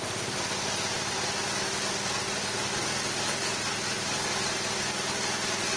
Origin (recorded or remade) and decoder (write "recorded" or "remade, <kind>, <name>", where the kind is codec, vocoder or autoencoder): recorded